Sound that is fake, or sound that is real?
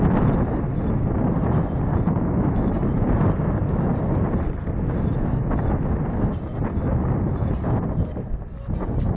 real